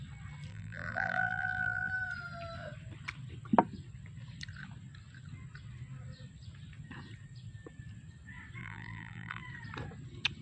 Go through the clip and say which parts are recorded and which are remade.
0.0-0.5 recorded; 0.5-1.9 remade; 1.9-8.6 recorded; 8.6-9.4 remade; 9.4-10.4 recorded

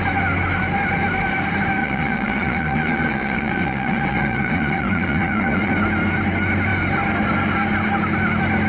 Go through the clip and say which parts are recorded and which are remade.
0.0-1.8 recorded; 1.8-5.7 remade; 5.7-8.7 recorded

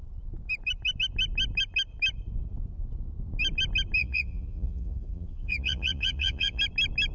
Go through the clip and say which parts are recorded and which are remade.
0.0-4.0 recorded; 4.0-6.6 remade; 6.6-7.1 recorded

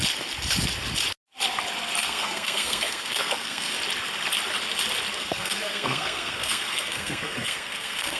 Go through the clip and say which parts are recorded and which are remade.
0.0-2.0 recorded; 2.0-3.7 remade; 3.7-5.2 recorded; 5.2-8.2 remade

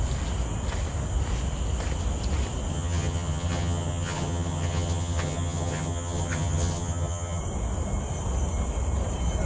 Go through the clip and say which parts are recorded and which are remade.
0.0-2.7 recorded; 2.7-7.4 remade; 7.4-9.4 recorded

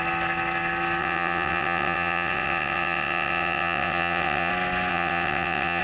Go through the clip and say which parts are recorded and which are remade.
0.0-1.0 recorded; 1.0-4.5 remade; 4.5-4.9 recorded; 4.9-5.8 remade

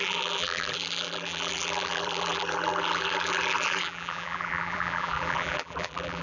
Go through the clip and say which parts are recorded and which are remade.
0.0-6.2 remade

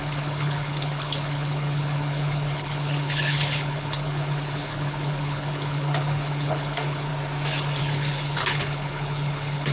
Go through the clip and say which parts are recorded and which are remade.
0.0-7.1 remade; 7.1-7.8 recorded; 7.8-9.7 remade